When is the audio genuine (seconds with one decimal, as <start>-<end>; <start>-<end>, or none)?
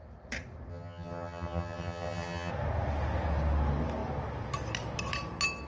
0.0-0.7; 2.5-5.7